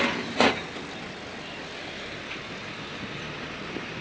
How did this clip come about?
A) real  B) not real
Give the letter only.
A